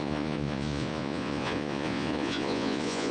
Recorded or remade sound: remade